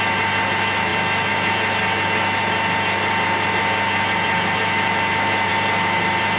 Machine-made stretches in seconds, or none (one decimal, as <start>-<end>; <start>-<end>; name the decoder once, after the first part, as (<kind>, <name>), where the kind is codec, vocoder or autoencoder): none